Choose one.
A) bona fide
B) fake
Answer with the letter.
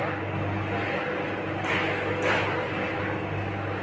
A